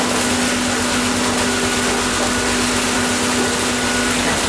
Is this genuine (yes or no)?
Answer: yes